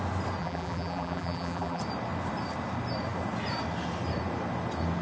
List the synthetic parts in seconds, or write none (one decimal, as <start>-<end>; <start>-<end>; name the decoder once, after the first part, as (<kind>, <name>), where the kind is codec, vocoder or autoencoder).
0.4-1.8 (vocoder, BigVGAN v2)